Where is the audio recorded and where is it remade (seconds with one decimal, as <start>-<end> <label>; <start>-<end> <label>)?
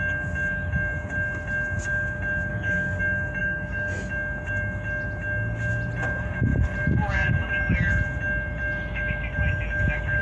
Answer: 0.0-2.5 recorded; 2.5-3.0 remade; 3.0-3.4 recorded; 3.4-4.1 remade; 4.1-10.2 recorded